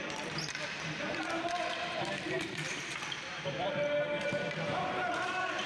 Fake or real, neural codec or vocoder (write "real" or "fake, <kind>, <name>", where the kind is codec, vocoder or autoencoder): fake, vocoder, BigVGAN v2